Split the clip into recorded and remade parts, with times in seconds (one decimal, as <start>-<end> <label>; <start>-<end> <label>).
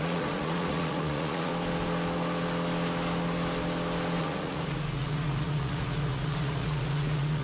0.0-1.5 remade; 1.5-4.2 recorded; 4.2-7.4 remade